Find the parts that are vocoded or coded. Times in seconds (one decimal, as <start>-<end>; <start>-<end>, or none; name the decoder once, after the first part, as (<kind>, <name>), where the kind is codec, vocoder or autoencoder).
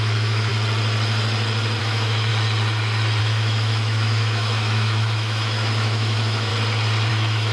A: 0.0-0.5 (autoencoder, DAC-VAE); 1.8-2.3; 3.2-6.5; 7.1-7.5